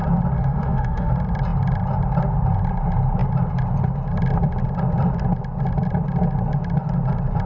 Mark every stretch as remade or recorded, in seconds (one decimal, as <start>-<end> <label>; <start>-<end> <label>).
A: 0.0-0.4 recorded; 0.4-1.1 remade; 1.1-7.5 recorded